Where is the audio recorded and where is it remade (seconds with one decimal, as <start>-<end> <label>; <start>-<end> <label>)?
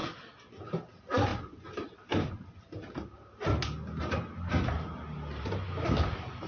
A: 0.0-6.5 recorded